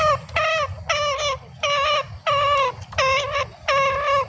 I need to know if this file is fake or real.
real